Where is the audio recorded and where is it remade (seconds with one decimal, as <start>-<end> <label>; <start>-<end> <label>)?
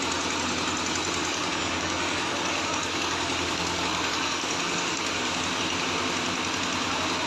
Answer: 0.0-1.2 recorded; 1.2-5.6 remade; 5.6-7.3 recorded